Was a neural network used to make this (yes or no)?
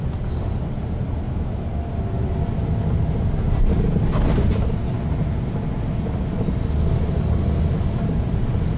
no